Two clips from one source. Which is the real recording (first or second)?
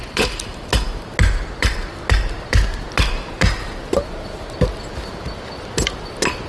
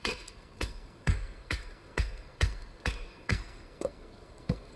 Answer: first